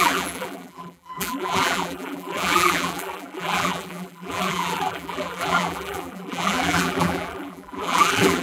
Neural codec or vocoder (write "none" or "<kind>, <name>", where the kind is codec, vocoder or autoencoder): vocoder, BigVGAN v2